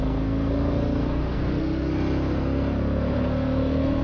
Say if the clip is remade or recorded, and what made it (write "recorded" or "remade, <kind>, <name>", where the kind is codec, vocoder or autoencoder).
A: remade, codec, SNAC